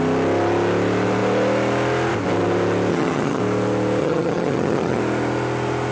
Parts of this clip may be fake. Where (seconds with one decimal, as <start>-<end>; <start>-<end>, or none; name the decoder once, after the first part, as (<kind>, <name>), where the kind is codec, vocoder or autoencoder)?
2.9-3.4 (vocoder, HiFi-GAN); 4.0-5.0